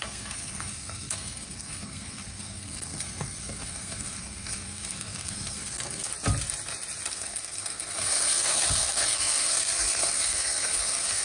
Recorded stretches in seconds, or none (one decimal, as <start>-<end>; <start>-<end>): 6.1-7.1